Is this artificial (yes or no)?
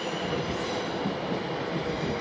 no